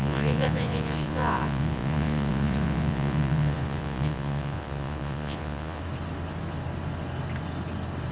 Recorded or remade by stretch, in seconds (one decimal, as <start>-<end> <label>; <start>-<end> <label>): 0.0-5.8 remade; 5.8-8.1 recorded